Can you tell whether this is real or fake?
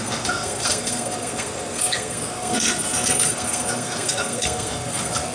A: fake